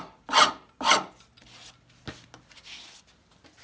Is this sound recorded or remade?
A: recorded